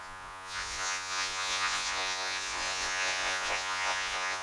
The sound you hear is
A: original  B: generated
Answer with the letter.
B